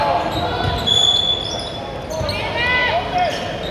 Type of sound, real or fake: real